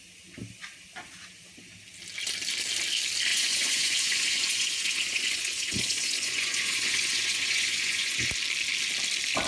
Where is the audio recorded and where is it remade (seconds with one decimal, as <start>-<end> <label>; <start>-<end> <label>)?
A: 0.0-3.3 recorded; 3.3-8.3 remade; 8.3-9.5 recorded